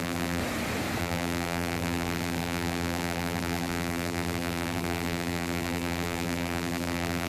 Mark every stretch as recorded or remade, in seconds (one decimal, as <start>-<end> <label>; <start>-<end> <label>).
0.0-0.4 remade; 0.4-1.0 recorded; 1.0-7.3 remade